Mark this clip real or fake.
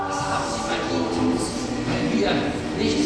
real